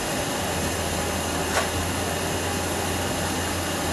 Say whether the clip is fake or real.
real